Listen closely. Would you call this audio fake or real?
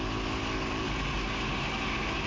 real